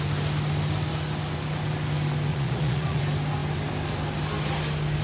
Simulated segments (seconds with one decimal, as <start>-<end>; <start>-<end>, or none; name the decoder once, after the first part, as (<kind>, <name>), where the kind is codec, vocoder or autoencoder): 2.3-3.0 (vocoder, Vocos)